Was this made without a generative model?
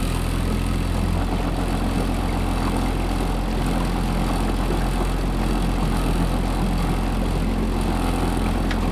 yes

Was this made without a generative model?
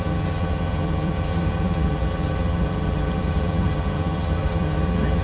no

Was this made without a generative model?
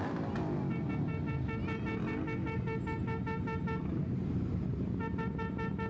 yes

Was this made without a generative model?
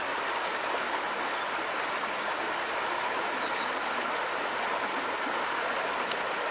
yes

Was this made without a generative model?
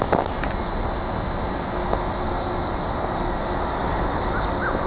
yes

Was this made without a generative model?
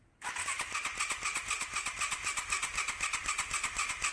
yes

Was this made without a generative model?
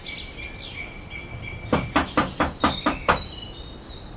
yes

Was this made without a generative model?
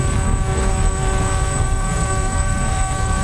no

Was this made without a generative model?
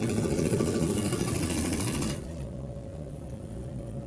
no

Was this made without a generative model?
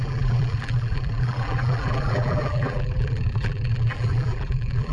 no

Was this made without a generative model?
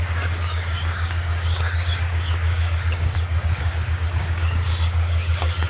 no